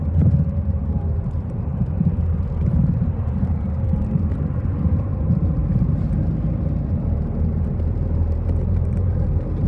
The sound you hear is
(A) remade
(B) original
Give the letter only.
A